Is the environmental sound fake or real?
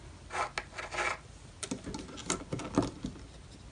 real